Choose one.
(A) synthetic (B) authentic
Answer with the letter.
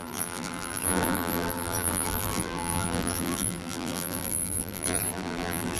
A